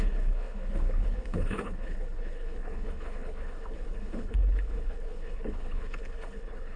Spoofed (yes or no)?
yes